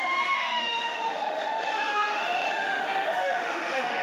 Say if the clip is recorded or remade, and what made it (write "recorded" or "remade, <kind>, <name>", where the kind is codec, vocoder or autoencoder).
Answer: remade, autoencoder, DAC-VAE